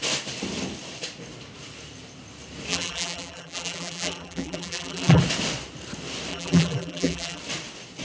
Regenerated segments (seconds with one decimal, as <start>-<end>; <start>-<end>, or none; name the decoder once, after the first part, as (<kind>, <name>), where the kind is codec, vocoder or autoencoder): 2.7-5.2 (vocoder, BigVGAN v2); 6.3-7.4